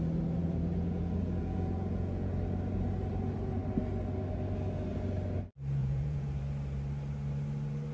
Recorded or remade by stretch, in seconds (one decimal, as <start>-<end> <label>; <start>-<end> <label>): 0.0-0.4 recorded; 0.4-2.3 remade; 2.3-5.8 recorded; 5.8-6.4 remade; 6.4-7.9 recorded